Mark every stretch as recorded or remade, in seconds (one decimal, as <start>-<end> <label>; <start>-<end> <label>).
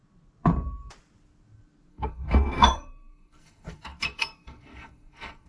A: 0.0-1.9 recorded; 1.9-5.5 remade